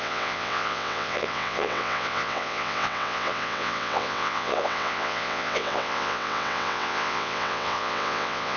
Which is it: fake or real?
fake